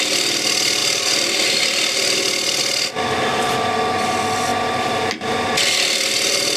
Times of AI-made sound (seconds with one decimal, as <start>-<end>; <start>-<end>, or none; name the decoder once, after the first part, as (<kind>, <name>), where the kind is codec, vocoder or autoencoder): none